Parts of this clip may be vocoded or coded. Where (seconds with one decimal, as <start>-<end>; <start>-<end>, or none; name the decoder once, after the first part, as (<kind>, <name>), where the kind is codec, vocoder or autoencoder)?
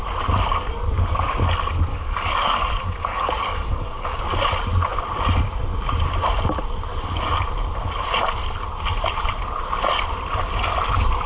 1.9-4.2 (codec, DAC)